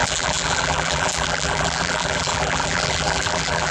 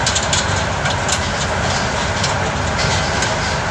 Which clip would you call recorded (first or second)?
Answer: second